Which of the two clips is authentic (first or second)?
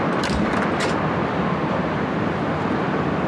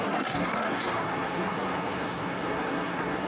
first